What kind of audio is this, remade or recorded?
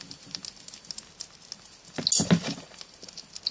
recorded